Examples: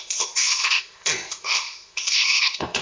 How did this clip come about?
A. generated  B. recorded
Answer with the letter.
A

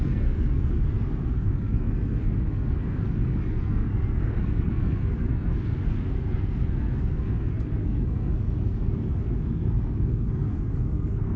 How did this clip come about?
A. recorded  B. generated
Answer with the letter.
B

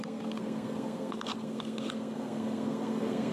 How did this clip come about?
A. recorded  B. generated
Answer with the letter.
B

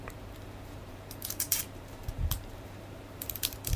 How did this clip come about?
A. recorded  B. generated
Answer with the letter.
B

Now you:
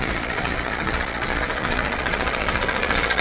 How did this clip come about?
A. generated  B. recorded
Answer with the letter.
A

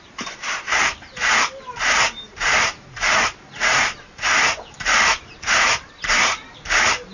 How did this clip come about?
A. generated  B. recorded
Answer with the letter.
A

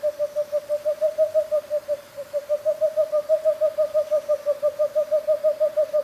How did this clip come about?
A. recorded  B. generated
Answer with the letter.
A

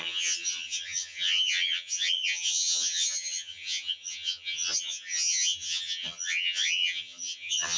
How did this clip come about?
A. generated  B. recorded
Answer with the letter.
A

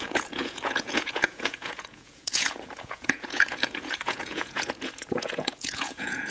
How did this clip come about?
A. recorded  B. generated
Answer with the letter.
B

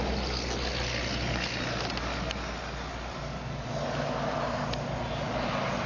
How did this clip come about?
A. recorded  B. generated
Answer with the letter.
A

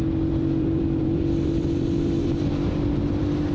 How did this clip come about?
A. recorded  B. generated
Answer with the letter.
B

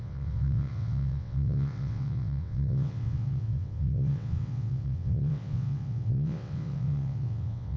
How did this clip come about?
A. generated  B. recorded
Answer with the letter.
A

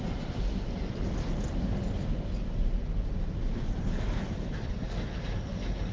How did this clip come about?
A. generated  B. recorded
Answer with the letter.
B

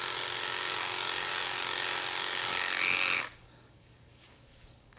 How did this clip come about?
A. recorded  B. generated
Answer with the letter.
B